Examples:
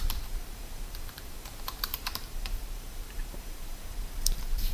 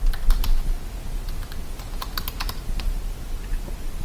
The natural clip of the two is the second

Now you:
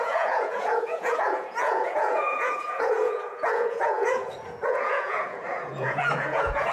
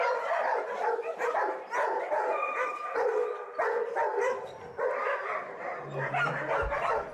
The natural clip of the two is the second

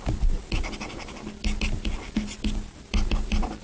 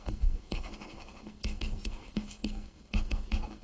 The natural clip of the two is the first